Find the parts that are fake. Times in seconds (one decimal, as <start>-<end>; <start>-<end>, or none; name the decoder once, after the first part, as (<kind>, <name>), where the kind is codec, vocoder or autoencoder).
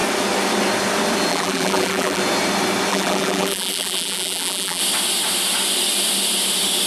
1.3-2.2 (vocoder, BigVGAN v2); 2.9-4.8